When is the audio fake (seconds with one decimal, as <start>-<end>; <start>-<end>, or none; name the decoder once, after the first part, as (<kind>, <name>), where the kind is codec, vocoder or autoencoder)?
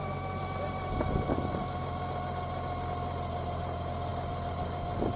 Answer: none